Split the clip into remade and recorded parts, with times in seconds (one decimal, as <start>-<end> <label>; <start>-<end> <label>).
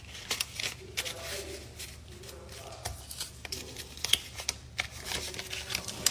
0.0-6.1 recorded